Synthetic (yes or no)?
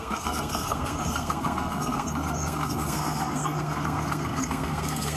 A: yes